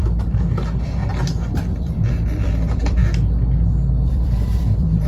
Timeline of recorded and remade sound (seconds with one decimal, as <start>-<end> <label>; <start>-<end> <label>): 0.0-1.0 remade; 1.0-1.5 recorded; 1.5-3.0 remade; 3.0-4.1 recorded; 4.1-5.1 remade